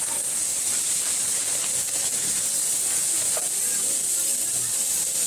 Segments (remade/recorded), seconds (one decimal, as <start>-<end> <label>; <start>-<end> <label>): 0.0-2.6 recorded; 2.6-3.2 remade; 3.2-5.3 recorded